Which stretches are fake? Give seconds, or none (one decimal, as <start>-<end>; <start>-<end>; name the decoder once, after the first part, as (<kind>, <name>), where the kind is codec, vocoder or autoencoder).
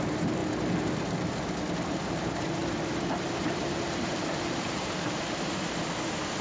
0.0-0.4 (vocoder, BigVGAN v2); 1.8-2.6; 3.4-6.4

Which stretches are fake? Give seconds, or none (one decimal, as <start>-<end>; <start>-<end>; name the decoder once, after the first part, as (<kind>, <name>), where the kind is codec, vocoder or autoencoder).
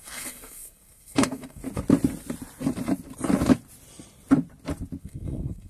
0.0-1.6 (codec, SNAC); 5.0-5.7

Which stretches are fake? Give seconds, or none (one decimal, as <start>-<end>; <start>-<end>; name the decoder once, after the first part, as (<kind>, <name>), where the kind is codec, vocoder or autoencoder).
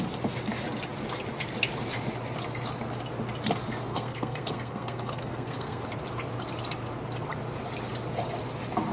3.9-5.8 (codec, SNAC)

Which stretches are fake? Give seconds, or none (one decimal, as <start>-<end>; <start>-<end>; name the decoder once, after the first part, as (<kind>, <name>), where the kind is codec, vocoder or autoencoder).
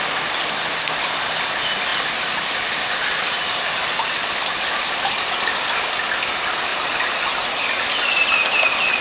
none